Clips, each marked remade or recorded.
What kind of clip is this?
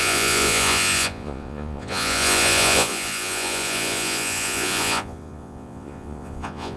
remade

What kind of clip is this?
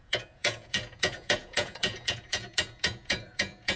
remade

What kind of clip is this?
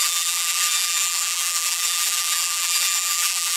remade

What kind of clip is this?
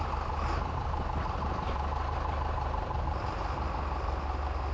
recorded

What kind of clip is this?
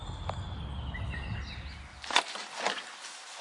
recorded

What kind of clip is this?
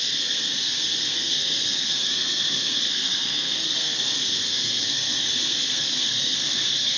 remade